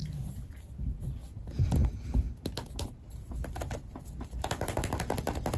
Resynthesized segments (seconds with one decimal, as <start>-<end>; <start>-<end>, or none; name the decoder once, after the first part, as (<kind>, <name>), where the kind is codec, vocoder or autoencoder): none